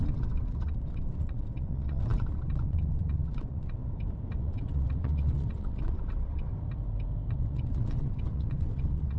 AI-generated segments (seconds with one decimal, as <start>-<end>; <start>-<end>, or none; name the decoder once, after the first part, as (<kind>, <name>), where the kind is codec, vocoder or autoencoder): 0.0-3.8 (vocoder, WaveNeXt); 4.4-6.5; 7.3-9.2